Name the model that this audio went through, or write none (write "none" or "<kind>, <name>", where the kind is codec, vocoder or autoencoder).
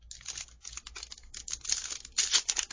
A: none